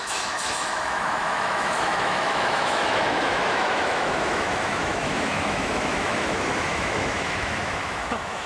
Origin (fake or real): fake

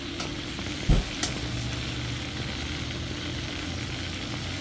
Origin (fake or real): real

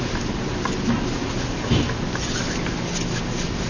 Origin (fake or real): real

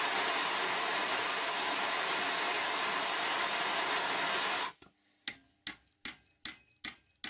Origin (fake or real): real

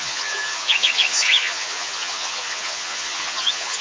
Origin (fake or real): fake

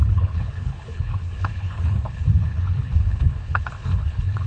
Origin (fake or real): fake